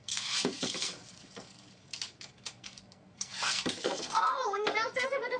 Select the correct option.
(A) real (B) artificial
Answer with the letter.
B